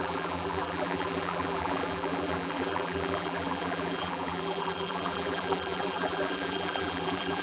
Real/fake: fake